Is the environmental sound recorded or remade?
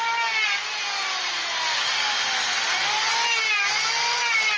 recorded